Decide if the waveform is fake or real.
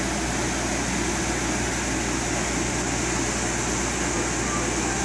real